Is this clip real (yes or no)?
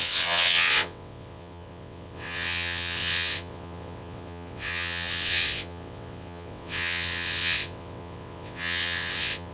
no